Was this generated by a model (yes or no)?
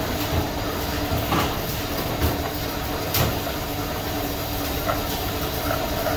no